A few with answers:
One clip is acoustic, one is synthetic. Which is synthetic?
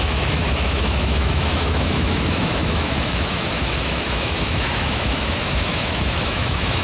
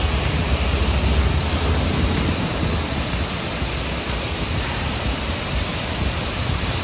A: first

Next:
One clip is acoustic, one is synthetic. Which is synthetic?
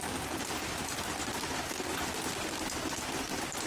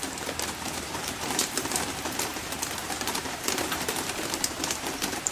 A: second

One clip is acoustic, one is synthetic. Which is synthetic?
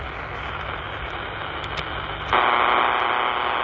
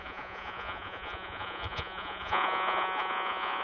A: second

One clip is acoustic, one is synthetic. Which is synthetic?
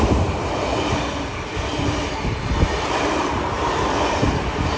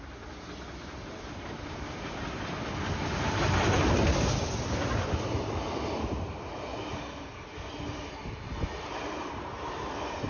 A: first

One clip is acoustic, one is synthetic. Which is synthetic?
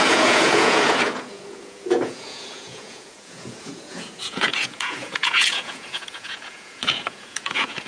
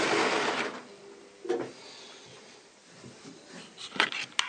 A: first